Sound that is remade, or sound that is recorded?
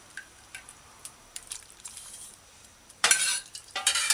remade